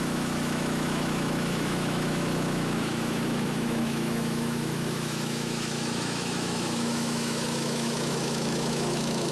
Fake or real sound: fake